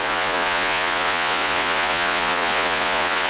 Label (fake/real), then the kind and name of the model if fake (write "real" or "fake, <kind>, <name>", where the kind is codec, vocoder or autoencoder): fake, vocoder, Vocos